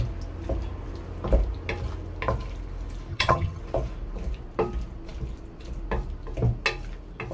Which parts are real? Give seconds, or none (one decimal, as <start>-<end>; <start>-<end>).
0.0-3.1; 3.6-7.3